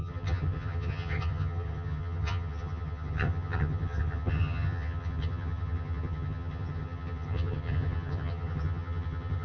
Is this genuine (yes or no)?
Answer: no